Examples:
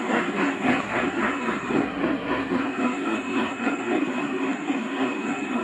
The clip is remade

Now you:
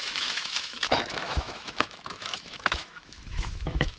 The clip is remade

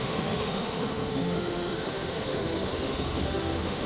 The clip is remade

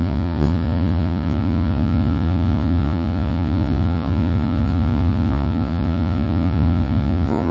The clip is remade